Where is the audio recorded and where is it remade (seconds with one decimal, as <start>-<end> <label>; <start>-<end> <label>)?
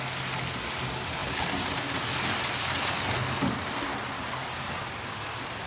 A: 0.0-5.7 recorded